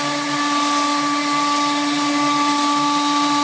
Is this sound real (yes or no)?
yes